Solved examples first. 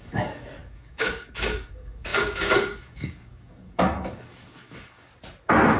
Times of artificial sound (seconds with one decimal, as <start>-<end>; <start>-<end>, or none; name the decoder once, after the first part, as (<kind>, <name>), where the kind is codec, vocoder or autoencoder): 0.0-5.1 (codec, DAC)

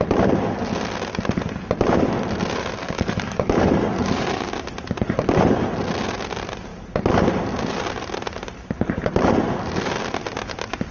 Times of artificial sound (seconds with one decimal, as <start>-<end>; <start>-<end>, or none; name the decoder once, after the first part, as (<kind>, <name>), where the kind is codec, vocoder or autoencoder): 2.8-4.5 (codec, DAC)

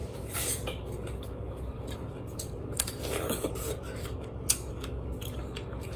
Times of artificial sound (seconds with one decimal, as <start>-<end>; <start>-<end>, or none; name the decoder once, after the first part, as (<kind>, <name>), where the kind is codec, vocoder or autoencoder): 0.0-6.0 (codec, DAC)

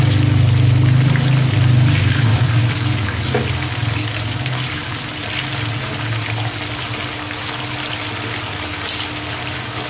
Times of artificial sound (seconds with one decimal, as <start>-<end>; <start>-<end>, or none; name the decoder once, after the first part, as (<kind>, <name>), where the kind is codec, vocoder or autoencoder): 2.3-4.9 (codec, DAC)

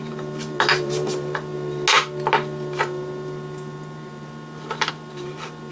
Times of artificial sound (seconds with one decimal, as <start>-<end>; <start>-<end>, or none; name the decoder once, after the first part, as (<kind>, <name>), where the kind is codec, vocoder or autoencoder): none